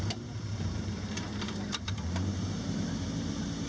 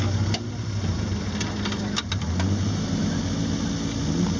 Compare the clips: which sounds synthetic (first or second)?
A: first